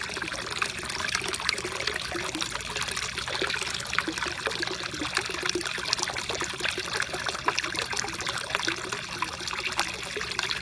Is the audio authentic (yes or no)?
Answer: yes